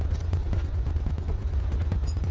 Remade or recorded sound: remade